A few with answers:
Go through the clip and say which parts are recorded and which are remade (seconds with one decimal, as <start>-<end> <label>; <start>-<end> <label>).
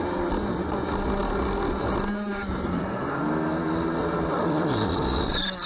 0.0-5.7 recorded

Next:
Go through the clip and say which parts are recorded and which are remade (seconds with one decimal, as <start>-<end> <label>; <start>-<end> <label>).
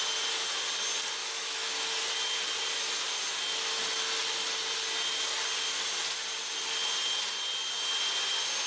0.0-1.2 recorded; 1.2-1.7 remade; 1.7-8.7 recorded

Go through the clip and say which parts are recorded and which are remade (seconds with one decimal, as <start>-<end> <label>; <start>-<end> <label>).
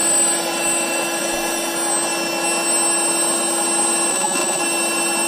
0.0-4.1 recorded; 4.1-4.6 remade; 4.6-5.3 recorded